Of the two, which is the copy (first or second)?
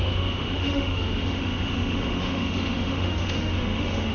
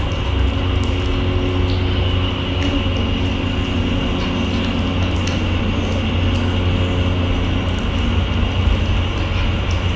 first